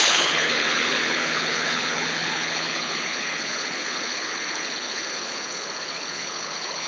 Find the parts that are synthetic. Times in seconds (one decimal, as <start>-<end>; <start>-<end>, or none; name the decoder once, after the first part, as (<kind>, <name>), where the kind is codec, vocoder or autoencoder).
0.0-6.9 (codec, HILCodec)